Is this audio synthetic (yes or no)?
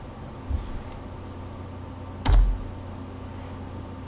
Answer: no